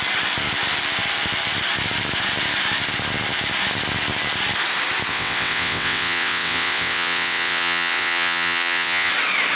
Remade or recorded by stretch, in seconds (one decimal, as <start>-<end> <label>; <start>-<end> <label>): 0.0-5.1 recorded; 5.1-9.1 remade; 9.1-9.6 recorded